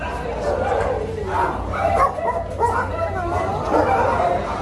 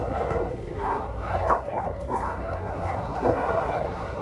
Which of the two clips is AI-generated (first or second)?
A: second